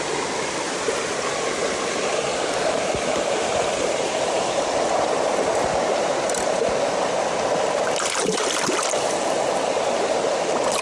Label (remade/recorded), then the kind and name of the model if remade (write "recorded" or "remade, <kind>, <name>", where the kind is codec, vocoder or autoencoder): recorded